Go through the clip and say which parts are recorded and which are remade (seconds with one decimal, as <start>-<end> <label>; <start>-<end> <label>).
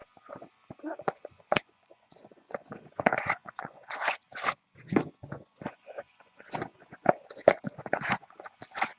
0.0-0.8 recorded; 0.8-9.0 remade